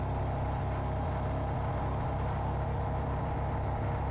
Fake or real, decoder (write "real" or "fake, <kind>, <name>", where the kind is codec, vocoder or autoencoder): real